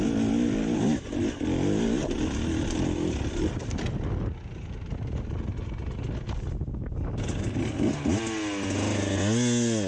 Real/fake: real